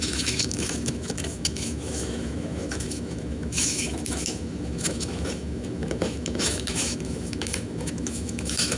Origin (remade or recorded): remade